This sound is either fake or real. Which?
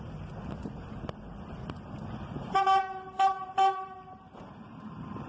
real